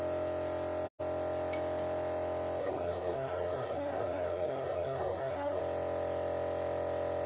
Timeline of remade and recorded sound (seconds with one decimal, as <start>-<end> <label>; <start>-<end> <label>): 0.0-2.6 recorded; 2.6-5.6 remade; 5.6-7.3 recorded